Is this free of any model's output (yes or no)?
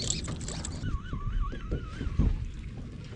yes